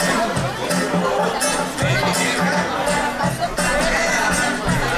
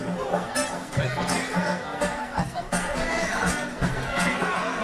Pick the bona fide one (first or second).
first